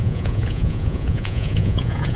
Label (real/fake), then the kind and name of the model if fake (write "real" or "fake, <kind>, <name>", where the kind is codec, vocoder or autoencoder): fake, vocoder, Vocos